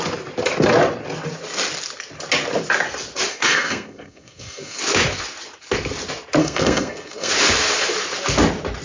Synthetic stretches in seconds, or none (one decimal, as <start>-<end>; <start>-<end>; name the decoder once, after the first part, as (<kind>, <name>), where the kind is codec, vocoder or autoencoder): 3.3-4.8 (codec, SNAC); 6.4-7.3